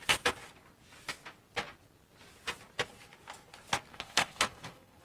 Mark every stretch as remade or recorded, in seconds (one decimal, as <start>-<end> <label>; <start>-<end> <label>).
0.0-3.9 recorded; 3.9-5.0 remade